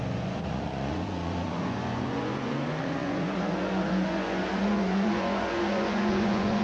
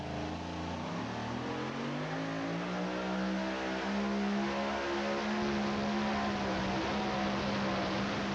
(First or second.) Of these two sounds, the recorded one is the second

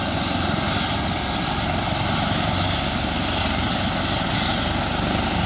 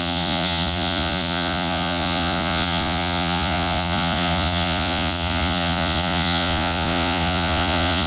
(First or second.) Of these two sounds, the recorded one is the first